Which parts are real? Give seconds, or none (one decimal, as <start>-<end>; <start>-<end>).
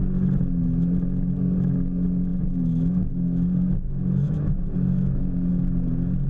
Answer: 0.0-2.3; 5.5-6.3